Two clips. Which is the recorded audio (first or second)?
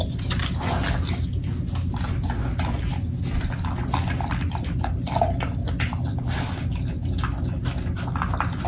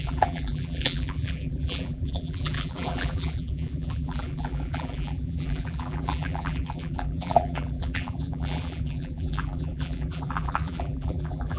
first